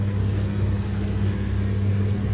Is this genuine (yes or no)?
no